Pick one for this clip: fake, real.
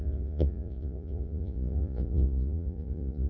fake